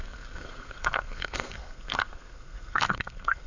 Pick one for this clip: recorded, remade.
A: remade